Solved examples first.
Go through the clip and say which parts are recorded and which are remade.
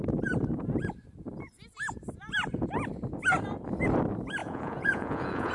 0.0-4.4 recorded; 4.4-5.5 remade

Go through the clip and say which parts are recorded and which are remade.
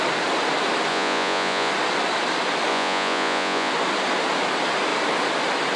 0.0-0.9 recorded; 0.9-1.7 remade; 1.7-2.7 recorded; 2.7-3.7 remade; 3.7-5.8 recorded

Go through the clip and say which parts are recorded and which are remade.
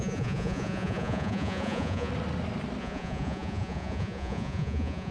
0.0-2.1 remade; 2.1-2.8 recorded; 2.8-5.1 remade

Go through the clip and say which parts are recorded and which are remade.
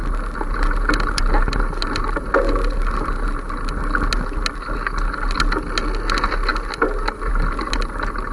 0.0-8.3 recorded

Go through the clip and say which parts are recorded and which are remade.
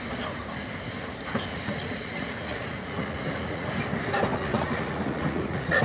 0.0-1.5 recorded; 1.5-3.7 remade; 3.7-4.3 recorded; 4.3-5.8 remade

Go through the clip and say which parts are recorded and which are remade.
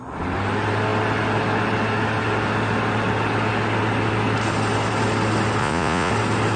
0.0-5.6 recorded; 5.6-6.1 remade; 6.1-6.6 recorded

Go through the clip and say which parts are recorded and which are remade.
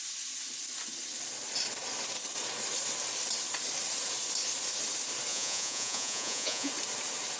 0.0-5.3 recorded; 5.3-6.7 remade; 6.7-7.4 recorded